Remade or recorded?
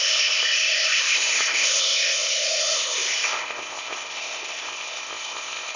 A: remade